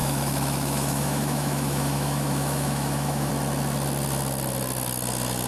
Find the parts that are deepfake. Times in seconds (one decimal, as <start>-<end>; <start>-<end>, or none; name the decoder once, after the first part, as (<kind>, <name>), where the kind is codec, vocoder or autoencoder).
0.0-3.3 (autoencoder, DAC-VAE)